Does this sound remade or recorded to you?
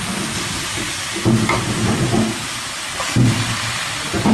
recorded